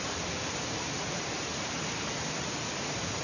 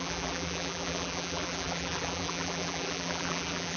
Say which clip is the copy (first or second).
second